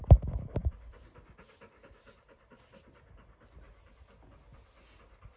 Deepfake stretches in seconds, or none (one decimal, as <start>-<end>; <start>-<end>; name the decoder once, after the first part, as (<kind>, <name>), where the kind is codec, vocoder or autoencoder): none